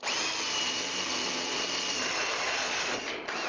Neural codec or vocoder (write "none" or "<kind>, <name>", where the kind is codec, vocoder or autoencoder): none